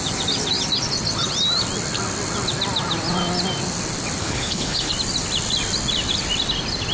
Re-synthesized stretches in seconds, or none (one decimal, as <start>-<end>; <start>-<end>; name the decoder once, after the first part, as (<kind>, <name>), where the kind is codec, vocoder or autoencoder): 4.2-4.9 (codec, HILCodec)